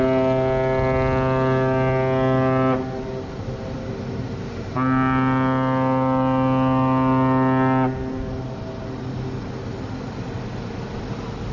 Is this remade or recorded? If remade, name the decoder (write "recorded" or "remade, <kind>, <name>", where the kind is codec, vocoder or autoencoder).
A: recorded